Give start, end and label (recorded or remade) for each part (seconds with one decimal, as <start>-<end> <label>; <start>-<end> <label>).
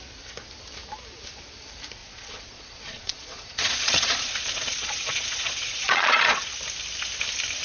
0.0-2.0 recorded; 2.0-6.5 remade; 6.5-7.6 recorded